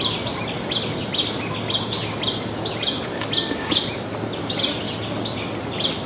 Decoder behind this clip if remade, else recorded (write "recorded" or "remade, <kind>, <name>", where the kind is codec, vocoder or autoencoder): recorded